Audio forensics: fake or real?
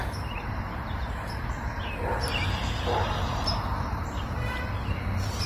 fake